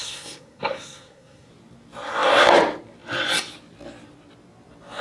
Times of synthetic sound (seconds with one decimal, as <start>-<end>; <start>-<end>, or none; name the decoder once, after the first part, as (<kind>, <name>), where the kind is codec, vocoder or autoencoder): 0.0-1.5 (codec, SNAC)

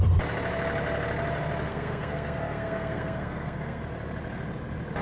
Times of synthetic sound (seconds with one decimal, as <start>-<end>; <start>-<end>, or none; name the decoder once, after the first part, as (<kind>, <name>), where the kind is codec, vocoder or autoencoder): 1.7-3.8 (codec, SNAC)

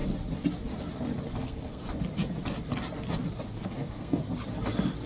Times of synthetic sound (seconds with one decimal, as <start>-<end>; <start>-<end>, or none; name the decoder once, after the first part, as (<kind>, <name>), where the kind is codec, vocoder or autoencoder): 1.4-1.8 (codec, SNAC); 3.5-4.2

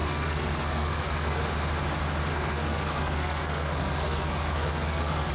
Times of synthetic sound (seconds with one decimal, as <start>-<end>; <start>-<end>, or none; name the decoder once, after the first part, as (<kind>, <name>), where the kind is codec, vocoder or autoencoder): 0.0-1.4 (codec, SNAC); 2.3-5.3